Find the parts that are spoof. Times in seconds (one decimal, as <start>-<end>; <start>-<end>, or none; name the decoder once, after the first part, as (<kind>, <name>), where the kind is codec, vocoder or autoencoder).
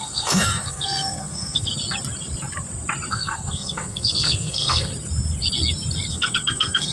0.0-1.7 (codec, SNAC); 3.1-4.9; 6.1-6.9